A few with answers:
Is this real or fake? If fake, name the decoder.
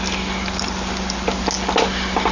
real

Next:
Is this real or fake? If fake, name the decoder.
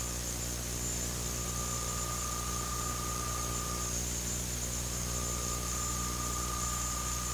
real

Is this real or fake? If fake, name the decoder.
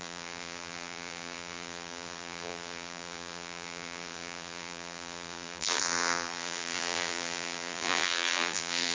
fake, vocoder, BigVGAN v2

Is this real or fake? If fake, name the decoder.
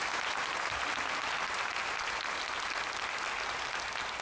real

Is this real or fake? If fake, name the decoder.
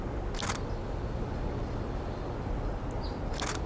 real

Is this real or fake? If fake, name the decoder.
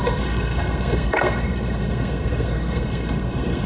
fake, codec, SNAC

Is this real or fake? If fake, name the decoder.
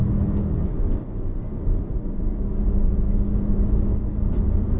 real